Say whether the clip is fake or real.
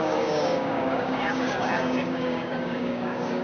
fake